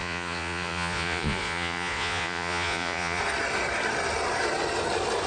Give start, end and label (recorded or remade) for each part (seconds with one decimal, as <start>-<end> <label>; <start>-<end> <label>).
0.0-3.2 remade; 3.2-5.3 recorded